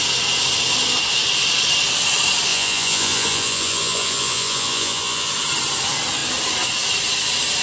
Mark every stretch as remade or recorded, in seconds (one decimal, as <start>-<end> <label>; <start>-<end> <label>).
0.0-2.5 recorded; 2.5-5.3 remade; 5.3-7.6 recorded